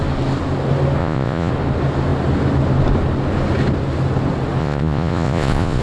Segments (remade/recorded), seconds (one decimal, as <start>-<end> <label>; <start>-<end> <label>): 0.0-1.0 recorded; 1.0-1.5 remade; 1.5-4.6 recorded; 4.6-5.8 remade

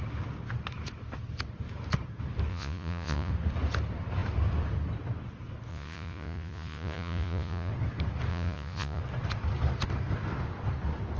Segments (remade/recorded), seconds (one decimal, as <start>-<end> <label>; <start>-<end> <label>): 0.0-2.5 recorded; 2.5-3.3 remade; 3.3-5.7 recorded; 5.7-7.7 remade; 7.7-8.3 recorded; 8.3-9.0 remade; 9.0-11.2 recorded

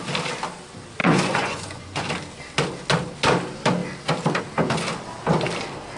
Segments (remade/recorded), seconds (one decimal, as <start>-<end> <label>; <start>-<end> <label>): 0.0-1.0 recorded; 1.0-2.1 remade; 2.1-6.0 recorded

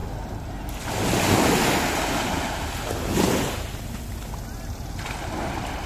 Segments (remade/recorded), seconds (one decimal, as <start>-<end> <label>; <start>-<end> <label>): 0.0-5.9 recorded

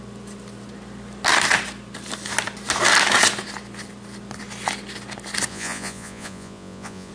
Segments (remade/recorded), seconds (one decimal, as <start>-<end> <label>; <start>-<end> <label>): 0.0-5.5 recorded; 5.5-7.1 remade

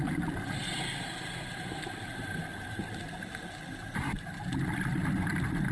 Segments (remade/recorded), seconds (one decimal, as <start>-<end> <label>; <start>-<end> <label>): 0.0-5.7 recorded

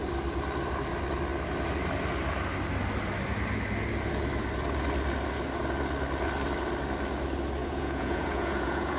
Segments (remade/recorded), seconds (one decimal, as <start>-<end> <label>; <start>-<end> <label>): 0.0-7.6 recorded; 7.6-9.0 remade

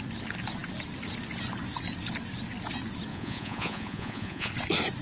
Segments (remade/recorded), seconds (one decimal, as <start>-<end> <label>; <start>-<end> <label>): 0.0-3.1 recorded; 3.1-4.5 remade; 4.5-5.0 recorded